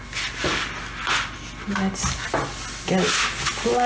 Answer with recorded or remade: recorded